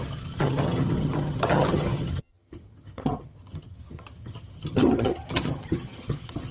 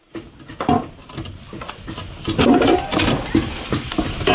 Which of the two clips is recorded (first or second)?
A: second